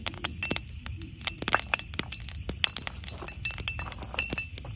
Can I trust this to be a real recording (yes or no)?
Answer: yes